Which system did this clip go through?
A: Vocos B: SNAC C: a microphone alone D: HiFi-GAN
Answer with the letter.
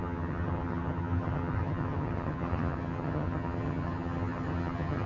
D